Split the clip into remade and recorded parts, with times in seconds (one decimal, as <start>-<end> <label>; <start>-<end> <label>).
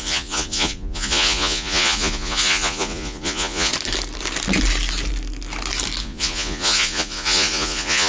0.0-3.7 remade; 3.7-6.0 recorded; 6.0-8.1 remade